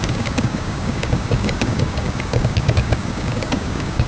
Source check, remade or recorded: remade